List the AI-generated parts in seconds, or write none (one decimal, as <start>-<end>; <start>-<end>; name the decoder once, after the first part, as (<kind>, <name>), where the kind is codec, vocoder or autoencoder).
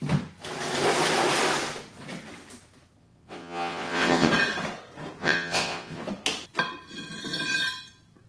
3.0-4.3 (vocoder, WaveNeXt); 5.2-6.0